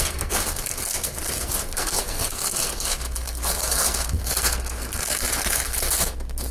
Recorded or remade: remade